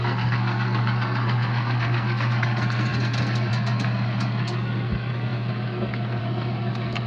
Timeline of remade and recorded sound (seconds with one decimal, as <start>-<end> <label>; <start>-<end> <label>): 0.0-7.1 remade